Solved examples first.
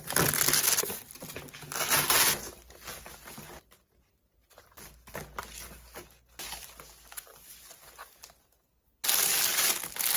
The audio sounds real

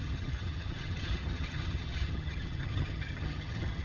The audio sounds fake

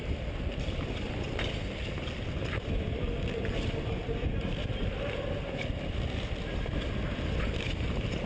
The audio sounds real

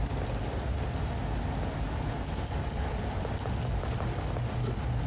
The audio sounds real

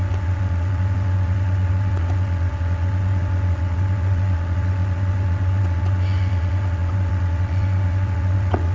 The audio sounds fake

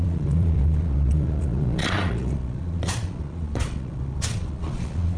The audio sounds fake